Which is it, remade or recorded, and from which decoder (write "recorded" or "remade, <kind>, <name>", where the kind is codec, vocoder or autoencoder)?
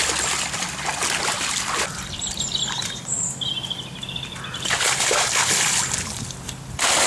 recorded